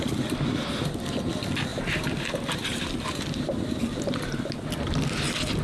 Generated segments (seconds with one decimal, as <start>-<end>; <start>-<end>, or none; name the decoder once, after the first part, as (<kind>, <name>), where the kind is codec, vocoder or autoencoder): 1.7-4.0 (vocoder, BigVGAN v2)